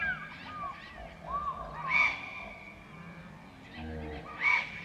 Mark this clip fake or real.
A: real